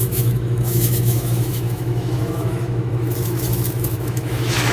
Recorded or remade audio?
remade